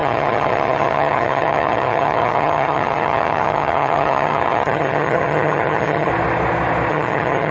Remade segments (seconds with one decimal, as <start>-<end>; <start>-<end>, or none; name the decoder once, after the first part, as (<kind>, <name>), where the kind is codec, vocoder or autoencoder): 0.0-6.1 (vocoder, HiFi-GAN); 6.9-7.5